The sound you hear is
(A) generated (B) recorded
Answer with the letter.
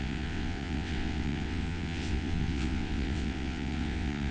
A